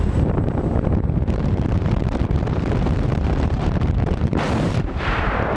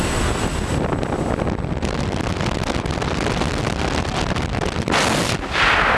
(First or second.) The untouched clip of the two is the second